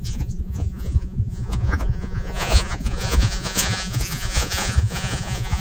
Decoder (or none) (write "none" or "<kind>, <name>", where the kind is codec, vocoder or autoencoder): vocoder, Vocos